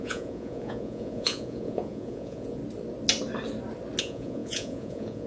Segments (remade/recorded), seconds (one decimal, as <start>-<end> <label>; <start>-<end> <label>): 0.0-2.6 remade; 2.6-4.0 recorded; 4.0-5.3 remade